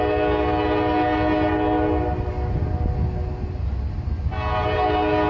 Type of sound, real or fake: real